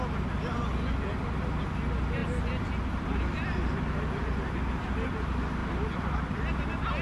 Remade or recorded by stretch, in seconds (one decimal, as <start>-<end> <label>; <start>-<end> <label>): 0.0-5.6 recorded; 5.6-6.4 remade; 6.4-7.0 recorded